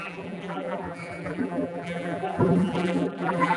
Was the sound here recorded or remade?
remade